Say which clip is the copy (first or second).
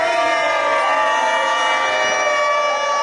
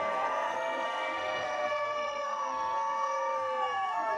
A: second